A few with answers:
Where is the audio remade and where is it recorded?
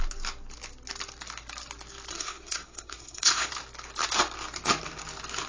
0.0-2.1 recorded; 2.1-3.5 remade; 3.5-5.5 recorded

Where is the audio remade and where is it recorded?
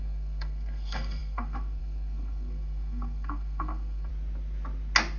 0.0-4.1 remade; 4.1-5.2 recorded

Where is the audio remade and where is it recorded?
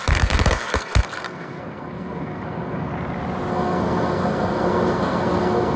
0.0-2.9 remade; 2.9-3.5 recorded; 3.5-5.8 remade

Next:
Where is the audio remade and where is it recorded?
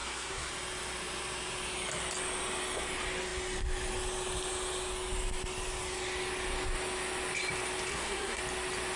0.0-0.5 remade; 0.5-7.9 recorded; 7.9-8.4 remade; 8.4-9.0 recorded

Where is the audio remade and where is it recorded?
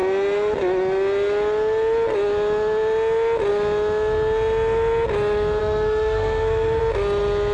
0.0-5.6 recorded; 5.6-6.8 remade; 6.8-7.5 recorded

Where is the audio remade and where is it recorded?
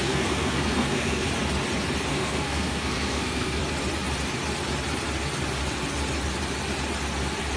0.0-1.3 remade; 1.3-2.1 recorded; 2.1-3.6 remade; 3.6-7.6 recorded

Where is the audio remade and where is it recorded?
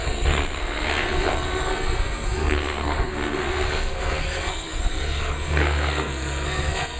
0.0-7.0 remade